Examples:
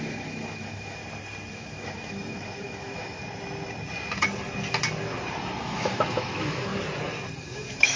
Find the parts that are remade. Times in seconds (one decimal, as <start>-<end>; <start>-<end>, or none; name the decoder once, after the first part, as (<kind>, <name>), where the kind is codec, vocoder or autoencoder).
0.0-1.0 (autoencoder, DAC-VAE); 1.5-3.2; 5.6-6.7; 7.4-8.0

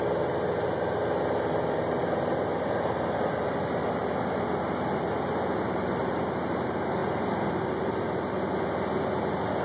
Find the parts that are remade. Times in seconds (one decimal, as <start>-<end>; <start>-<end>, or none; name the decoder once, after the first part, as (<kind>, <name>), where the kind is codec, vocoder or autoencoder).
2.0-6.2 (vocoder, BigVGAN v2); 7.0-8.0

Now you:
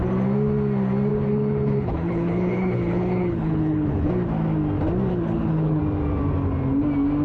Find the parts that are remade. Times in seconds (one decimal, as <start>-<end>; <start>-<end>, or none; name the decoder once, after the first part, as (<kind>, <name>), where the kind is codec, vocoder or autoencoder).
1.1-4.1 (codec, HILCodec); 5.1-5.8